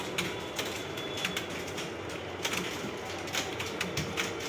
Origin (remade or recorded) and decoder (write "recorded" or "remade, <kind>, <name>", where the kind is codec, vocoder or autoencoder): recorded